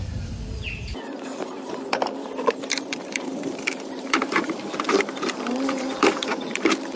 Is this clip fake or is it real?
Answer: fake